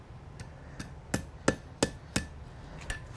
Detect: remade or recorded recorded